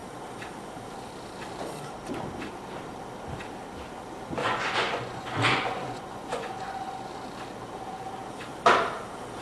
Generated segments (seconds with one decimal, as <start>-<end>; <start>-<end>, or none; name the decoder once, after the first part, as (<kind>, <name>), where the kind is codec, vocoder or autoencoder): 4.4-7.1 (vocoder, Vocos)